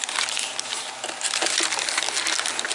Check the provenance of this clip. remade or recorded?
recorded